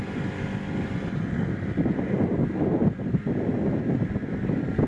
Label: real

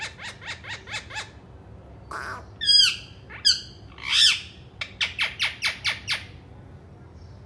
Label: real